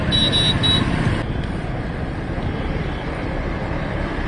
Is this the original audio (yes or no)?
yes